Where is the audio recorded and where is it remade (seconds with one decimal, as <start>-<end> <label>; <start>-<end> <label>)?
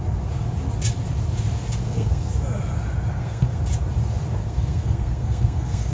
0.0-1.8 recorded; 1.8-2.3 remade; 2.3-3.1 recorded; 3.1-3.6 remade; 3.6-4.4 recorded; 4.4-5.9 remade